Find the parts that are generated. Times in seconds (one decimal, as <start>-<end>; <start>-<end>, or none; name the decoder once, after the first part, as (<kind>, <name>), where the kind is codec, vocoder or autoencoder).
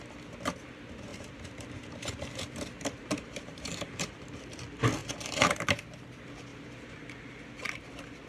1.1-4.4 (vocoder, BigVGAN v2); 5.0-5.8; 6.5-7.0